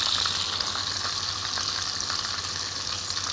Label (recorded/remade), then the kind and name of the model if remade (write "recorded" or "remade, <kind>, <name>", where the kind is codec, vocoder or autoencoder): recorded